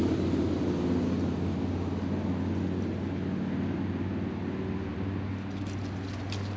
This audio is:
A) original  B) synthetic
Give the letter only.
A